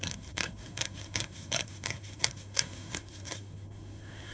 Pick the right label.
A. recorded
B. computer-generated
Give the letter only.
B